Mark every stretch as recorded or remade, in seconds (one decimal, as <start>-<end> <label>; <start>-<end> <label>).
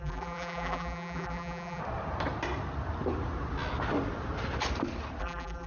0.0-1.8 remade; 1.8-5.2 recorded; 5.2-5.7 remade